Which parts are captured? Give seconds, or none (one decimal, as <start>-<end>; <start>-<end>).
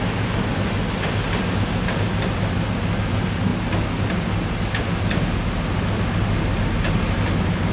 0.0-7.7